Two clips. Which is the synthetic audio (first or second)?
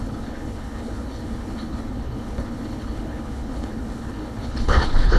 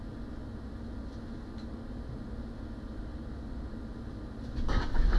first